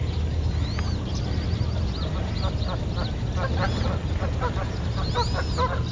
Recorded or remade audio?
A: recorded